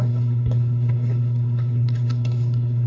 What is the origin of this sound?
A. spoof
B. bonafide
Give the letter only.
A